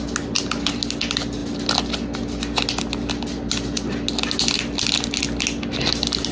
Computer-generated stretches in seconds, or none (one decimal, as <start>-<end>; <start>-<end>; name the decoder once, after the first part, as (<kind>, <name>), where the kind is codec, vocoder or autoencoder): none